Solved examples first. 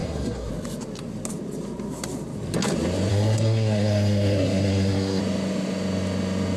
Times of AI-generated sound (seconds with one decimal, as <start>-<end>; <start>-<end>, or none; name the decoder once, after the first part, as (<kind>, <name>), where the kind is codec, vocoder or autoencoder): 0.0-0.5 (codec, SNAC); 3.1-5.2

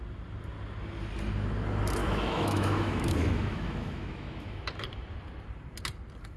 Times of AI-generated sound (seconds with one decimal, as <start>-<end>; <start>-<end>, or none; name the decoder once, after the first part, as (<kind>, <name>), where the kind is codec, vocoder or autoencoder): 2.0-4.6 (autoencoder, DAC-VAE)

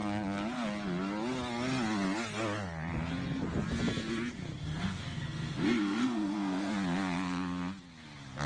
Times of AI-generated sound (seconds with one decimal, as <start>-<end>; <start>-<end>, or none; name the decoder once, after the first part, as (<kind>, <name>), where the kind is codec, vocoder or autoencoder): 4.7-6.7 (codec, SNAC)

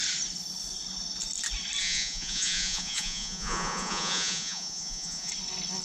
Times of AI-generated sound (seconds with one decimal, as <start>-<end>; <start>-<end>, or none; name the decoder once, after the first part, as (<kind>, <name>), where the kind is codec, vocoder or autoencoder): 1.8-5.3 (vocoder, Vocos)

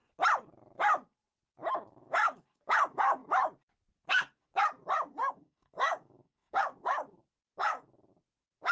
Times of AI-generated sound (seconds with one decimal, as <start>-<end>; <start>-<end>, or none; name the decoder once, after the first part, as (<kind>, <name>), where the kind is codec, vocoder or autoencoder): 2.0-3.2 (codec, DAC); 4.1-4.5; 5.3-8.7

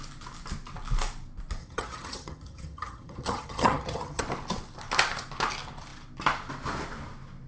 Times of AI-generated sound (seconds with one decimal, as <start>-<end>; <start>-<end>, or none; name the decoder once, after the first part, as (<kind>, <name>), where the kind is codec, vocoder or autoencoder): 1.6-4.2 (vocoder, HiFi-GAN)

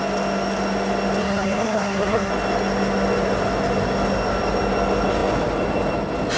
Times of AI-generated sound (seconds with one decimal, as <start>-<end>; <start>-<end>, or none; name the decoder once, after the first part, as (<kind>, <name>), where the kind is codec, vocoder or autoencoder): 1.2-2.3 (codec, SNAC)